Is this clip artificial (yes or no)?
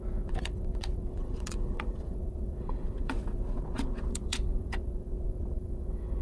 yes